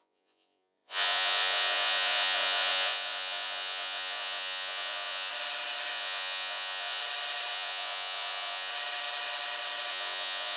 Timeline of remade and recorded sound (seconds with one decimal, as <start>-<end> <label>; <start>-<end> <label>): 0.0-5.3 remade; 5.3-5.9 recorded; 5.9-7.0 remade; 7.0-7.5 recorded; 7.5-8.7 remade; 8.7-9.9 recorded; 9.9-10.6 remade